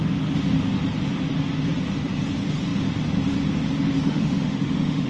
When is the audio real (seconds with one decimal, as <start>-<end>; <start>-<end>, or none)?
0.0-4.0